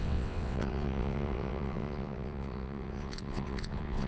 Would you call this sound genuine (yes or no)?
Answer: no